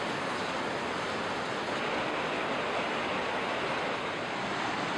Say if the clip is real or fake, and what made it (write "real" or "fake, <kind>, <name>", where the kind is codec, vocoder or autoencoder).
real